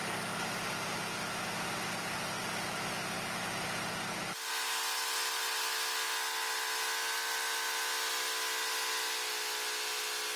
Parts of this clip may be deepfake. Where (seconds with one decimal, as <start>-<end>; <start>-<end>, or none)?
none